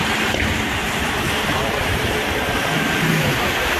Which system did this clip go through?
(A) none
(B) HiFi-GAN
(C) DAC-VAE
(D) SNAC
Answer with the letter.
A